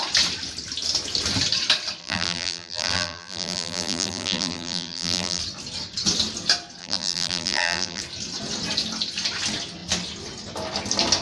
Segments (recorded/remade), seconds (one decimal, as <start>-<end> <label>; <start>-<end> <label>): 0.0-2.0 recorded; 2.0-5.4 remade; 5.4-6.8 recorded; 6.8-8.0 remade; 8.0-11.2 recorded